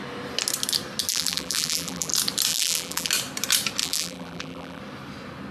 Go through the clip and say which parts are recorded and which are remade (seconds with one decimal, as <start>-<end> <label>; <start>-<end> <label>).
0.0-1.1 recorded; 1.1-2.1 remade; 2.1-2.5 recorded; 2.5-3.1 remade; 3.1-3.8 recorded; 3.8-4.8 remade; 4.8-5.5 recorded